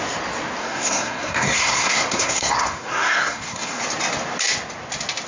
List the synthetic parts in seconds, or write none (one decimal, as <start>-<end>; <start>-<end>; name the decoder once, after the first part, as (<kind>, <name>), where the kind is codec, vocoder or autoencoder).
0.6-3.8 (codec, SNAC)